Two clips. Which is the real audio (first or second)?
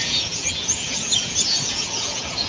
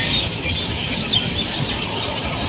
second